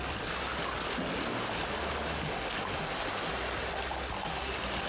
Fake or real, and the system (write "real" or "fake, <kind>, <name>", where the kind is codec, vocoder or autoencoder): real